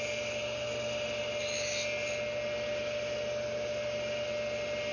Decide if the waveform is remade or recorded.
recorded